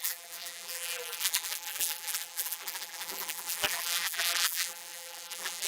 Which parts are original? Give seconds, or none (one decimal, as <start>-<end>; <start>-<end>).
none